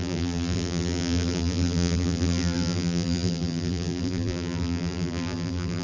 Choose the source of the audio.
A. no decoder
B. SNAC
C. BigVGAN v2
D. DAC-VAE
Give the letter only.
C